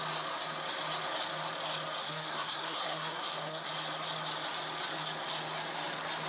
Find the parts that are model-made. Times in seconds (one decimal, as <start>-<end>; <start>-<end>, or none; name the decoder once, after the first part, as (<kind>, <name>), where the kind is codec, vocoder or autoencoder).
2.0-3.7 (codec, SNAC)